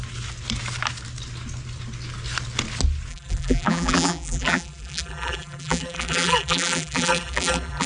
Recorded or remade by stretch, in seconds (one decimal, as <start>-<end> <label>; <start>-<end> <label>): 0.0-3.1 recorded; 3.1-7.9 remade